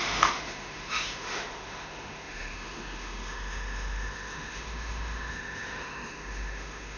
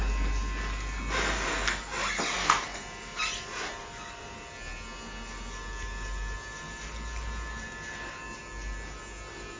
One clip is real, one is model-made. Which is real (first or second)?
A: second